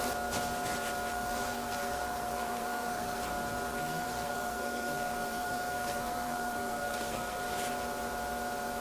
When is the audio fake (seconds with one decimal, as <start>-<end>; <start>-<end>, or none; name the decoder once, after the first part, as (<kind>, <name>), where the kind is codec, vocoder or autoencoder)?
1.1-3.3 (codec, SNAC); 3.7-7.5